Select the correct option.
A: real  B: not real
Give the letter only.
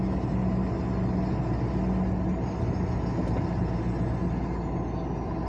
A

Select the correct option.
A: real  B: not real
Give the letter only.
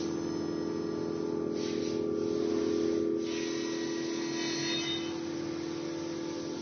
A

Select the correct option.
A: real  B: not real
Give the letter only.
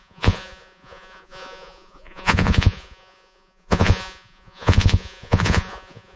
B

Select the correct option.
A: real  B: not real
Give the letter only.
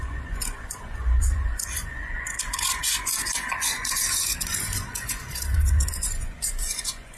B